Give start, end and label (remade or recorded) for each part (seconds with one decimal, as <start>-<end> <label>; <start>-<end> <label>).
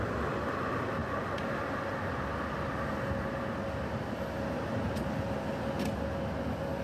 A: 0.0-6.8 recorded